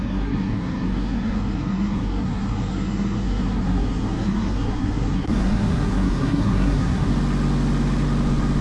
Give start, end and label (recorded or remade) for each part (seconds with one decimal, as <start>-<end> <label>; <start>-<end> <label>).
0.0-7.1 remade; 7.1-8.6 recorded